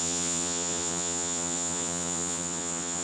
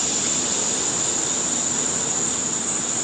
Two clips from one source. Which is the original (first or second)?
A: second